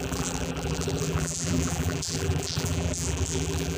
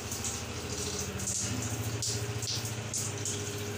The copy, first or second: first